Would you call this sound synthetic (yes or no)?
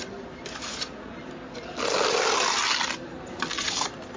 no